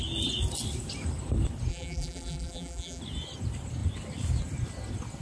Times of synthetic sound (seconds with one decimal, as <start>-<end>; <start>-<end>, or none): 1.7-3.0